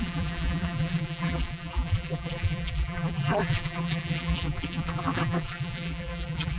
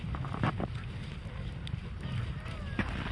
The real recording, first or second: second